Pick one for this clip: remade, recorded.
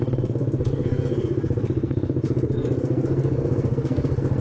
remade